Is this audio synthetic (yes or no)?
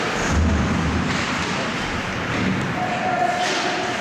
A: no